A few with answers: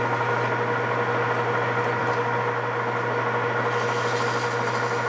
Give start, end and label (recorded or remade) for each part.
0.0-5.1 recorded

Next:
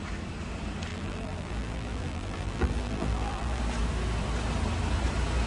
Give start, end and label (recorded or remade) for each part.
0.0-0.9 recorded; 0.9-3.6 remade; 3.6-5.5 recorded

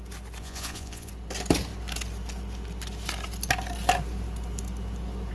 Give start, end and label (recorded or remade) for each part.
0.0-0.4 recorded; 0.4-1.1 remade; 1.1-5.3 recorded